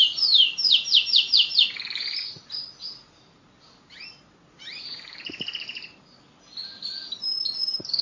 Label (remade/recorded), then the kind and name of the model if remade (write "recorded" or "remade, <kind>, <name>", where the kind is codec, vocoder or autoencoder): recorded